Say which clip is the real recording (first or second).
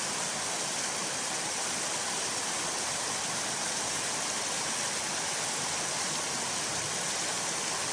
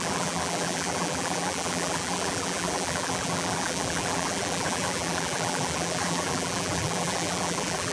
first